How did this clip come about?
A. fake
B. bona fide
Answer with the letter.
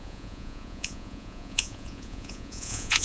A